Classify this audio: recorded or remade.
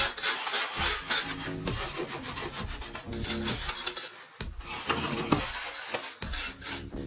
recorded